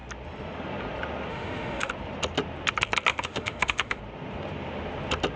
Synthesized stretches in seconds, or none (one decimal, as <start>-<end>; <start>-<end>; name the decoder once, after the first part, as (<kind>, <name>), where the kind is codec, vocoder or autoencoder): 1.3-1.9 (autoencoder, DAC-VAE); 3.1-4.0